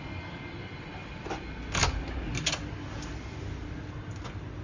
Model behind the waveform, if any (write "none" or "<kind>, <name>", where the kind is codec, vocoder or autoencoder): none